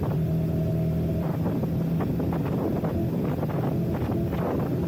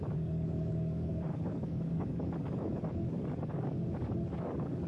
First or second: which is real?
first